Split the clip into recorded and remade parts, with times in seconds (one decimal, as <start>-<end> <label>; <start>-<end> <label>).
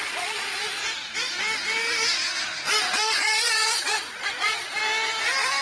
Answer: 0.0-0.8 remade; 0.8-2.8 recorded; 2.8-4.8 remade; 4.8-5.6 recorded